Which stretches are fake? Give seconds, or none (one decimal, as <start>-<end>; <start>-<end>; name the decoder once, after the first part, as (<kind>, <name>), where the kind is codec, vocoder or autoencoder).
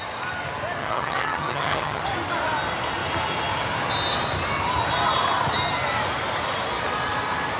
0.8-2.0 (vocoder, HiFi-GAN)